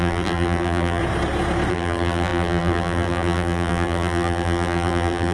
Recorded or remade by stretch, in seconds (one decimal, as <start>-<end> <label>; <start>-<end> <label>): 0.0-1.0 remade; 1.0-1.7 recorded; 1.7-5.3 remade